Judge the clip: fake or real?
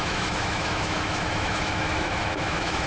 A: fake